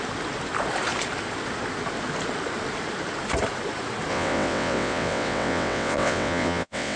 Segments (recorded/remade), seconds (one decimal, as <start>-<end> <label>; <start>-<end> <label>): 0.0-4.1 recorded; 4.1-7.0 remade